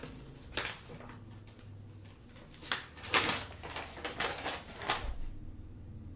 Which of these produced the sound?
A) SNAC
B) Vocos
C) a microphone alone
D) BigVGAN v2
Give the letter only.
C